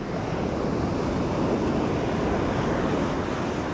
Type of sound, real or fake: real